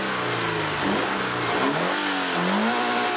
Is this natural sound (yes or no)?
yes